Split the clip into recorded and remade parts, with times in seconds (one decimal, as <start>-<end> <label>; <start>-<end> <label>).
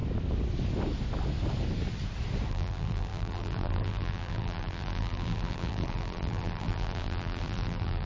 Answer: 0.0-2.5 recorded; 2.5-8.1 remade